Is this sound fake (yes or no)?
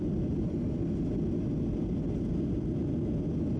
no